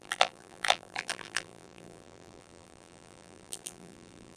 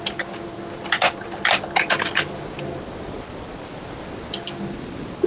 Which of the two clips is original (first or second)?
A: second